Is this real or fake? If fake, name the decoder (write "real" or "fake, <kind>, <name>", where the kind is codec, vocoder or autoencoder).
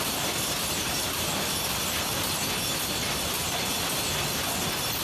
real